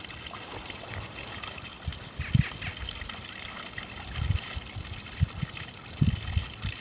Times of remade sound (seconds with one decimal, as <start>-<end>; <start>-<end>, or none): none